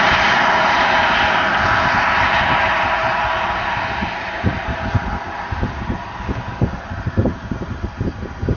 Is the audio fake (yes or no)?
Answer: no